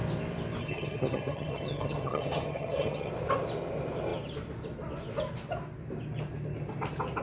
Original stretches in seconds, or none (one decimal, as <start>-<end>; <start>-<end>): 0.0-0.6; 3.1-7.2